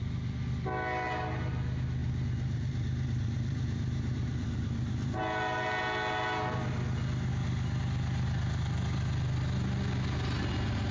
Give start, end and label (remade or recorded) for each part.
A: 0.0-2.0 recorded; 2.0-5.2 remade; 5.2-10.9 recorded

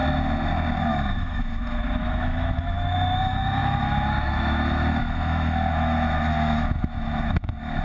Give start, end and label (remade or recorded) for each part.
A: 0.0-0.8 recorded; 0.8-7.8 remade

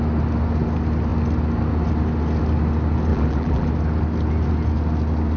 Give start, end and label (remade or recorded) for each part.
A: 0.0-3.1 recorded; 3.1-3.7 remade; 3.7-5.4 recorded

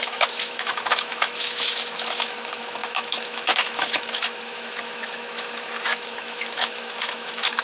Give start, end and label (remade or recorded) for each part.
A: 0.0-7.6 remade

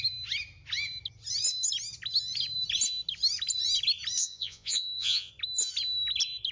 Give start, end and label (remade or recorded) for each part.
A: 0.0-4.2 recorded; 4.2-5.3 remade; 5.3-6.5 recorded

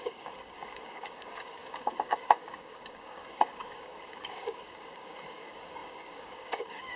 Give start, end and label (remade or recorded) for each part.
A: 0.0-7.0 remade

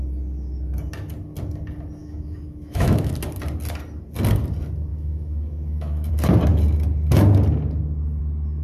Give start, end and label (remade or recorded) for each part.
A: 0.0-2.0 recorded; 2.0-3.1 remade; 3.1-4.9 recorded; 4.9-6.1 remade; 6.1-8.6 recorded

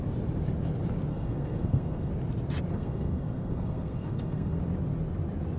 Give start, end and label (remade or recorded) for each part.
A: 0.0-1.1 recorded; 1.1-2.1 remade; 2.1-2.7 recorded; 2.7-4.6 remade; 4.6-5.6 recorded